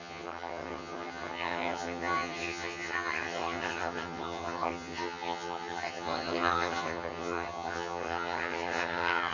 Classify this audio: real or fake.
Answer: fake